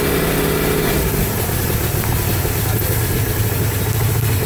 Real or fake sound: real